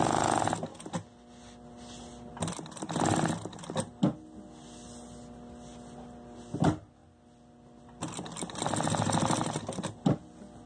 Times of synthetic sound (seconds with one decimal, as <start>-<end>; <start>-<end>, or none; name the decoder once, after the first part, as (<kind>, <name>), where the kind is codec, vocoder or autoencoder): none